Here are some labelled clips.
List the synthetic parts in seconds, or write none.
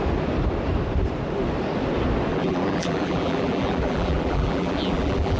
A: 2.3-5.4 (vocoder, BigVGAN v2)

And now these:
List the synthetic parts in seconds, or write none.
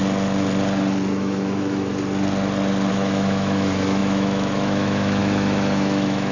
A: 1.1-1.9 (autoencoder, DAC-VAE); 2.9-6.3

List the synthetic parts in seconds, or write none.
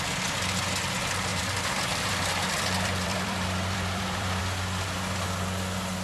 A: 1.3-4.4 (vocoder, BigVGAN v2)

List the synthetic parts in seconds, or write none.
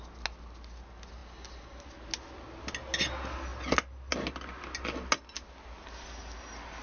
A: none